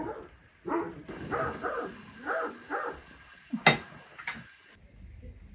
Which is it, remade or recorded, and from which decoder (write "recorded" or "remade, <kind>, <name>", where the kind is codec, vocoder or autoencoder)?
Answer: recorded